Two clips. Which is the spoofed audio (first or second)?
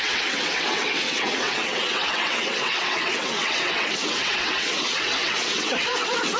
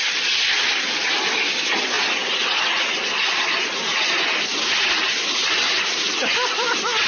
first